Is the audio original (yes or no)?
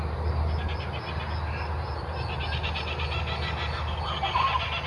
yes